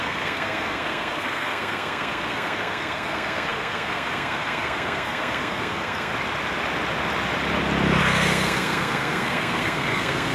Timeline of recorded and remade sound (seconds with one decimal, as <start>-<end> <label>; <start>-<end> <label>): 0.0-6.1 remade; 6.1-8.0 recorded; 8.0-10.3 remade